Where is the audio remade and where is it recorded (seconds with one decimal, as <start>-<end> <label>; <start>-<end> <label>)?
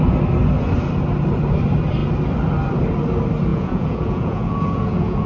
0.0-3.5 recorded; 3.5-5.3 remade